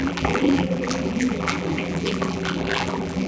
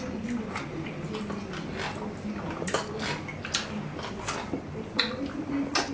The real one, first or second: second